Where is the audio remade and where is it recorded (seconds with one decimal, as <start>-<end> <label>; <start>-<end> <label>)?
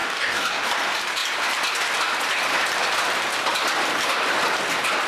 0.0-0.7 remade; 0.7-5.1 recorded